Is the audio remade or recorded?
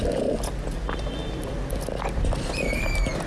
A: recorded